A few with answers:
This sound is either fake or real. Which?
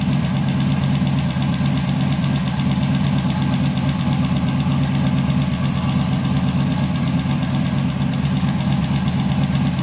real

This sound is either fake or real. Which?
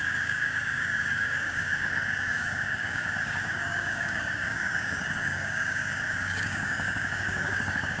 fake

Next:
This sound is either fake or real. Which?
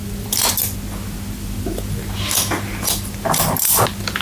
real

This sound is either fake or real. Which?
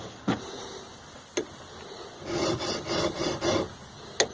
real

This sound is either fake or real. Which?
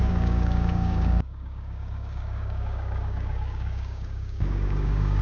fake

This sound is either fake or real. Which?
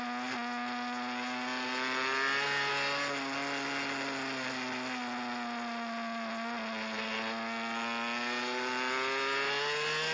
real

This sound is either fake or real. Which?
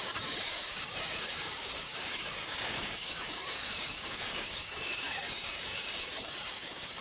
fake